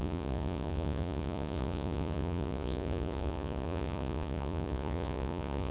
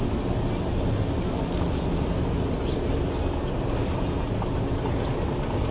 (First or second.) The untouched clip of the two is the second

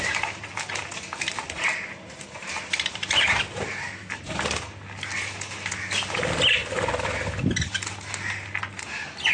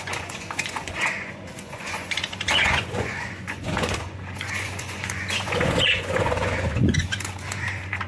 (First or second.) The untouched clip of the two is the first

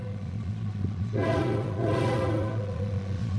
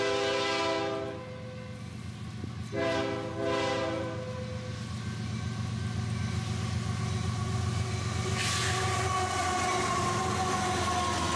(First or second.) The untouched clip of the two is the second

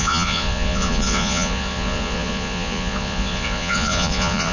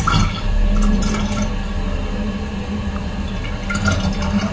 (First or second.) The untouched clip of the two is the second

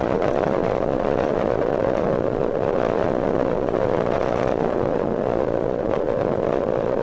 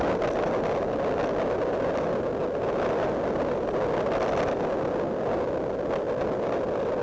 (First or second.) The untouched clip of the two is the second